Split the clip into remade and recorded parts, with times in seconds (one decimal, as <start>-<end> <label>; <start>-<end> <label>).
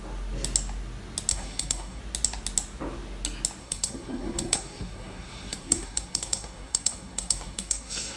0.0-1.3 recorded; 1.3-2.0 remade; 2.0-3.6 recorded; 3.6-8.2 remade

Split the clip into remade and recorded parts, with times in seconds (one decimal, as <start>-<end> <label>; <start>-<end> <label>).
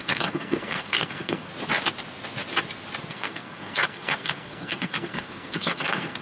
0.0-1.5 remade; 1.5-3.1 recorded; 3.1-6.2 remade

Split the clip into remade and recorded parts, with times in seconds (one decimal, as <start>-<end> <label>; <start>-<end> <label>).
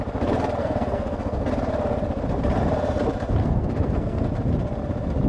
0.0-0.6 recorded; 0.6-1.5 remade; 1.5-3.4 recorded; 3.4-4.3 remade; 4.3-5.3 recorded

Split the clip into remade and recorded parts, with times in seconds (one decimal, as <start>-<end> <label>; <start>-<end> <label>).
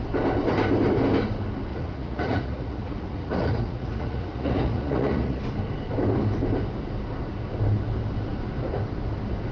0.0-1.7 recorded; 1.7-5.4 remade; 5.4-9.5 recorded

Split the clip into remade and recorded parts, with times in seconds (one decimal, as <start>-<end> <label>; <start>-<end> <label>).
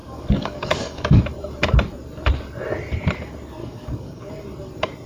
0.0-1.2 remade; 1.2-3.6 recorded; 3.6-4.3 remade; 4.3-5.1 recorded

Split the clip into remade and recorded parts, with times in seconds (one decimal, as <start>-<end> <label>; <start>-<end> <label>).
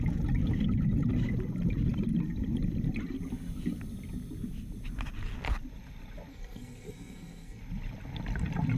0.0-6.3 recorded; 6.3-7.6 remade; 7.6-8.8 recorded